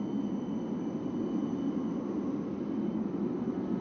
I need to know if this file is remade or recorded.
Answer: recorded